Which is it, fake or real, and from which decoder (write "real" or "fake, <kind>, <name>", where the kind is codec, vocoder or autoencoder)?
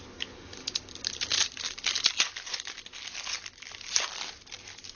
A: real